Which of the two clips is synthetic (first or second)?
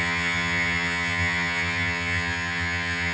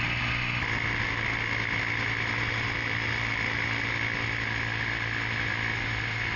first